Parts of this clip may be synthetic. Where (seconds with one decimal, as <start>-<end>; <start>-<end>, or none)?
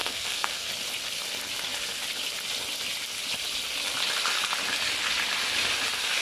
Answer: 0.0-0.7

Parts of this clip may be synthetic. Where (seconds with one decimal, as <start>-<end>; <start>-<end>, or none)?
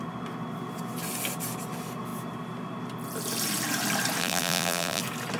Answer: 4.2-5.0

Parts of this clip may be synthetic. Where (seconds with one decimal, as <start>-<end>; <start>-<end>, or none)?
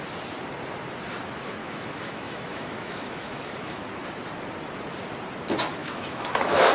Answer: 1.6-3.8; 5.8-6.7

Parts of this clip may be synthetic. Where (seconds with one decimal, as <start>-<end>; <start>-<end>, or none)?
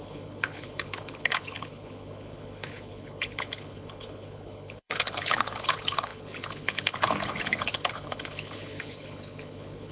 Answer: 0.0-9.9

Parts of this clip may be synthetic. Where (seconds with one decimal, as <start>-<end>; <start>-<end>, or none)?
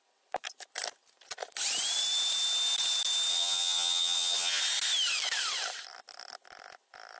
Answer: 3.3-4.6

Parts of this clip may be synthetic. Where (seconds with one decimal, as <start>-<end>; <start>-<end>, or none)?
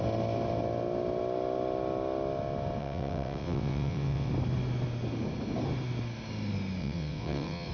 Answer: 2.8-4.3; 6.8-7.7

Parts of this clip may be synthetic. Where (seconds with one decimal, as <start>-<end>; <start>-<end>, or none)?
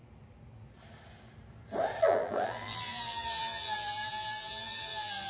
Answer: 2.0-5.3